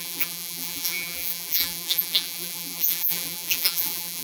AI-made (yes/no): yes